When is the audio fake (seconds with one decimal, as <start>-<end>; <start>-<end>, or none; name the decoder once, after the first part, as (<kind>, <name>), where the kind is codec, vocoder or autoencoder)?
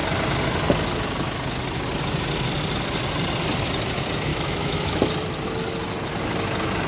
4.3-5.0 (autoencoder, DAC-VAE)